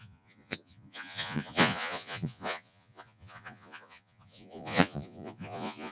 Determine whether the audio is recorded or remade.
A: remade